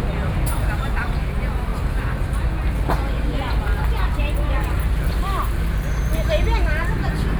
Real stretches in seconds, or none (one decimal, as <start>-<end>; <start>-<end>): 0.0-7.4